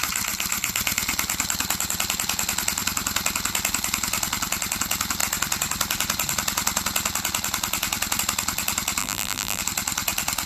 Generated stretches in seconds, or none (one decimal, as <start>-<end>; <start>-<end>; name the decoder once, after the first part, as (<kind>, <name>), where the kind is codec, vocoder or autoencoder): 9.0-9.6 (vocoder, BigVGAN v2)